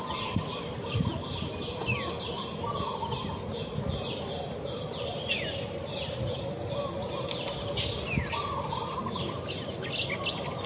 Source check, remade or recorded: recorded